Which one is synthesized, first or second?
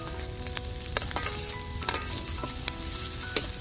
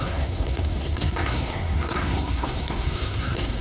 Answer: second